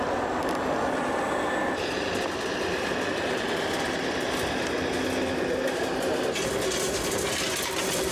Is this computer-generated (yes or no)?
no